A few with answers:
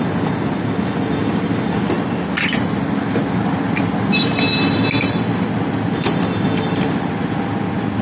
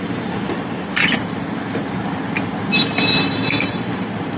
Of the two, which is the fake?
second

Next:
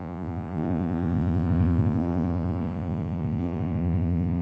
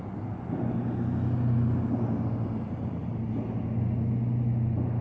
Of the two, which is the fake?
first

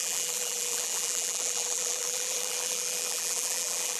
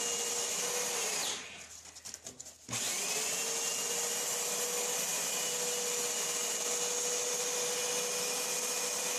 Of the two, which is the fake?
first